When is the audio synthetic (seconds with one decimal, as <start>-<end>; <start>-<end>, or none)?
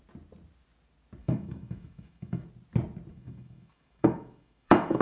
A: 1.2-2.5; 3.1-5.0